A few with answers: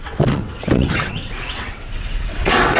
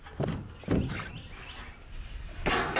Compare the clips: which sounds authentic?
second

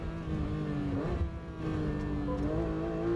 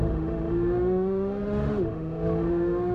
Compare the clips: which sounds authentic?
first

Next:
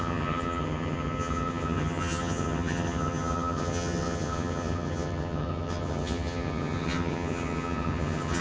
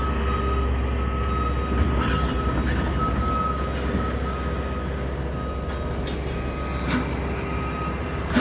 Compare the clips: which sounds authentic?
second